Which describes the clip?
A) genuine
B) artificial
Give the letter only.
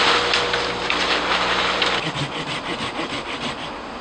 A